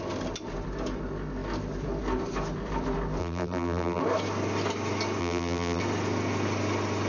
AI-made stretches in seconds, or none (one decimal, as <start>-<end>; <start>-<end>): 3.2-4.0; 5.2-5.8